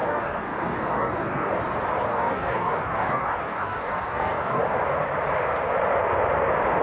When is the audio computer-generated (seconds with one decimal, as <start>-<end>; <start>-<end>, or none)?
0.0-1.5; 2.1-4.6